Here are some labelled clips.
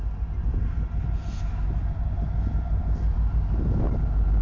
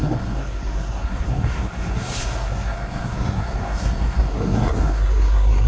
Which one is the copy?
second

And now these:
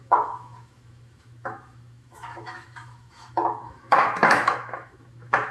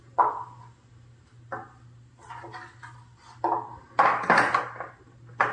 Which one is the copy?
first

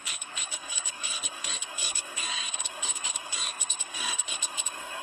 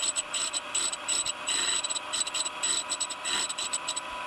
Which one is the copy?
first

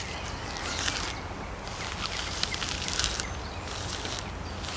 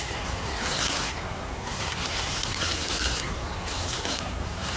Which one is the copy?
second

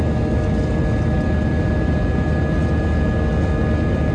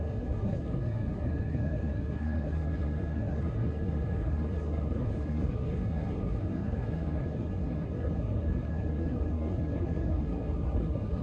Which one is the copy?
second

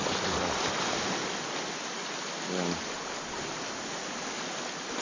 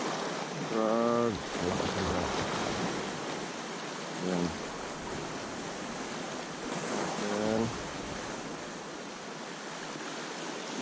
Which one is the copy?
first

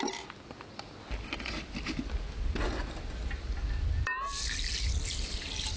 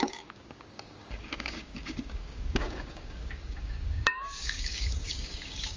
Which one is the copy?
second